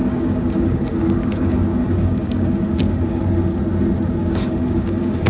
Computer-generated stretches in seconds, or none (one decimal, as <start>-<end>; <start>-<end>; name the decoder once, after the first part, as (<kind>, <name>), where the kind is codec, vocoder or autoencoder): 0.0-3.2 (codec, DAC); 4.2-5.3